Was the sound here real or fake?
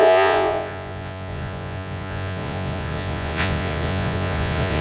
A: fake